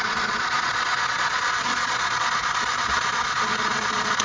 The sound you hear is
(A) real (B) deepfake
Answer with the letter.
B